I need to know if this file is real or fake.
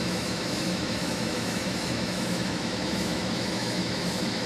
fake